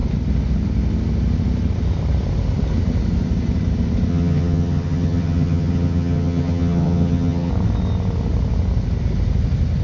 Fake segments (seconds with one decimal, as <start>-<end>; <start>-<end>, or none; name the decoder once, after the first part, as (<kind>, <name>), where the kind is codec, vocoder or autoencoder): 4.1-7.5 (vocoder, HiFi-GAN)